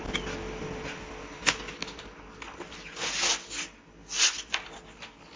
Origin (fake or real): real